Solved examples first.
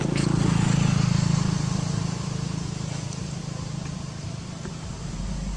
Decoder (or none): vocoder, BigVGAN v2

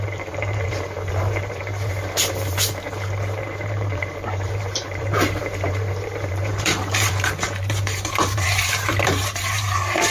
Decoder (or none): vocoder, BigVGAN v2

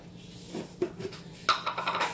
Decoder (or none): none